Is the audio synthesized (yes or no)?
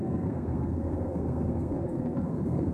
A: yes